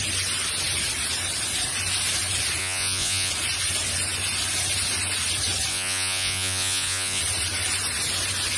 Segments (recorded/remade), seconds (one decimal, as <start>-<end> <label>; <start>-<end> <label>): 0.0-2.6 recorded; 2.6-3.3 remade; 3.3-5.7 recorded; 5.7-7.2 remade; 7.2-8.6 recorded